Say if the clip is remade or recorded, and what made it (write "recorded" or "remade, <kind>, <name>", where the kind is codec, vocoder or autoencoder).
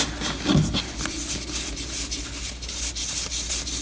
recorded